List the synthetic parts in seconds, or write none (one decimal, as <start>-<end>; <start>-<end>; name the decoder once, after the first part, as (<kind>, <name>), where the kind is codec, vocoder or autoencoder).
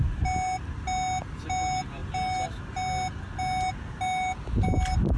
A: none